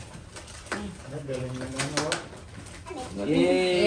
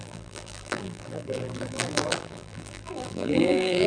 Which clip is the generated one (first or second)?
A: second